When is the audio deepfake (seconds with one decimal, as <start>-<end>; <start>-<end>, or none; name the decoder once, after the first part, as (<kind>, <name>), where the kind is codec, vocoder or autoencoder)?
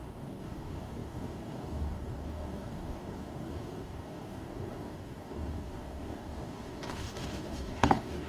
0.0-8.3 (codec, DAC)